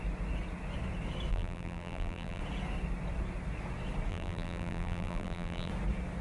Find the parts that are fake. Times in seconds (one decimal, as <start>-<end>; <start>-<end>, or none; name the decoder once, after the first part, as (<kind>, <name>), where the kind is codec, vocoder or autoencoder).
1.3-2.4 (vocoder, BigVGAN v2); 4.1-5.7